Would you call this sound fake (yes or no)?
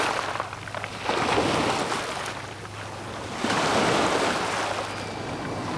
no